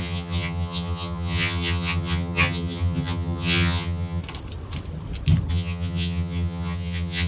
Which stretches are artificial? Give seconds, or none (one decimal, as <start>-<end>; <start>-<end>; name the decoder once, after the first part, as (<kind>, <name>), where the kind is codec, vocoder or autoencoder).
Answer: 0.0-4.2 (vocoder, HiFi-GAN); 5.5-7.3